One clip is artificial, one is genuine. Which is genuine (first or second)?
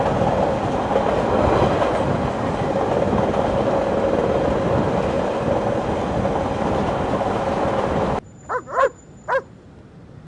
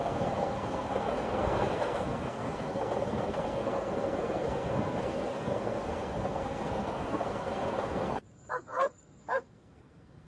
first